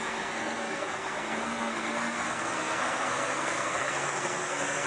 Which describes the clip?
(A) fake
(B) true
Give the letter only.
A